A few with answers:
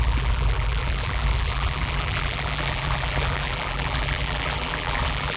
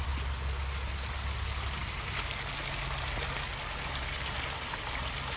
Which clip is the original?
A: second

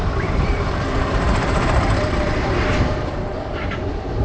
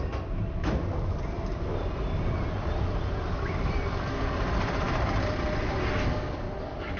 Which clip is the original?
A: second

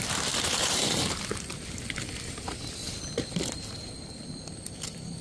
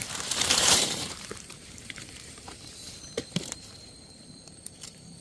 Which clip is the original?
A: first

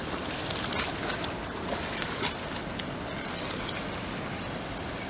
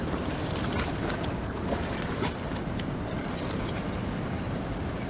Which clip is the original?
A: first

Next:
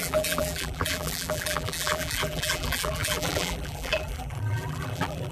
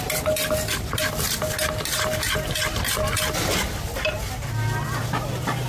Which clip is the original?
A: second